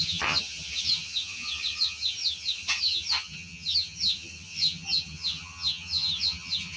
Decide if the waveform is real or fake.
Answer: fake